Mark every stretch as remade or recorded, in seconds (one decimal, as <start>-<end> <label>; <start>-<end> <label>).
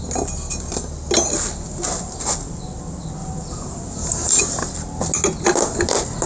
0.0-3.2 recorded; 3.2-4.4 remade; 4.4-6.3 recorded